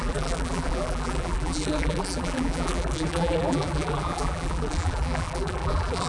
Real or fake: fake